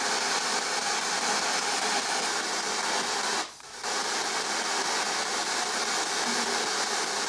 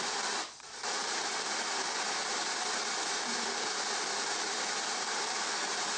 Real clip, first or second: first